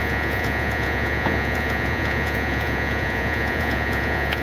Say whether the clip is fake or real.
fake